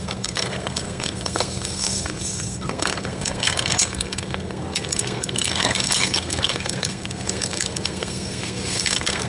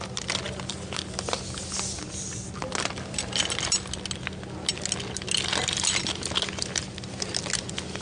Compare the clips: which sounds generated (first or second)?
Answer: first